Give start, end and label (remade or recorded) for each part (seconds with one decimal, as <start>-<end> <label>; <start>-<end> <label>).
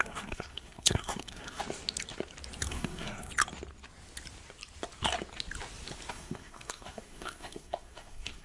0.0-1.6 remade; 1.6-2.7 recorded; 2.7-3.3 remade; 3.3-6.1 recorded; 6.1-8.4 remade